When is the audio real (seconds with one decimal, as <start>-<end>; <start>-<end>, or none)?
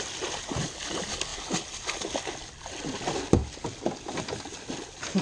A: 0.0-5.2